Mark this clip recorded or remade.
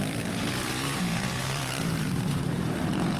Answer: remade